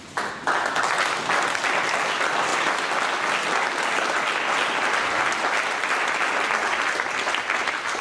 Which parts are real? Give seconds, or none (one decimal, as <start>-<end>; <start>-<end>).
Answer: 0.0-8.0